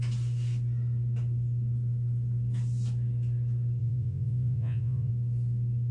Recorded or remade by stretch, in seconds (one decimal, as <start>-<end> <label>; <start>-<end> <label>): 0.0-3.8 recorded; 3.8-5.1 remade; 5.1-5.9 recorded